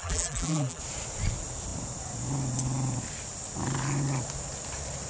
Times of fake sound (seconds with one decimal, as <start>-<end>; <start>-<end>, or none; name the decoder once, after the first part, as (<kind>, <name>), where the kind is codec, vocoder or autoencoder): 0.0-0.8 (vocoder, BigVGAN v2)